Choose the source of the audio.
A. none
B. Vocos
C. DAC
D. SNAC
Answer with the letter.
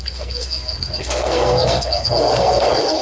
D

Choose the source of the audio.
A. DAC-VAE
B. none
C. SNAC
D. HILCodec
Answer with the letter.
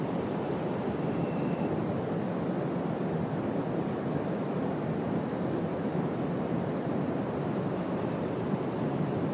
B